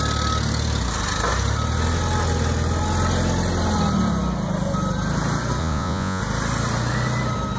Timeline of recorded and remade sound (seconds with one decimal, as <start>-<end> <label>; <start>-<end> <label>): 0.0-5.6 recorded; 5.6-6.2 remade; 6.2-7.6 recorded